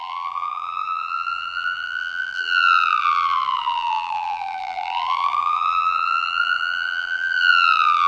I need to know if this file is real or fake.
fake